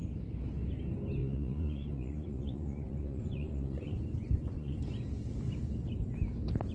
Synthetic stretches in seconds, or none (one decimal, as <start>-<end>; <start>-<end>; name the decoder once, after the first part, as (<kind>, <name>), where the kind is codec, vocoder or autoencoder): 1.2-4.9 (vocoder, Vocos)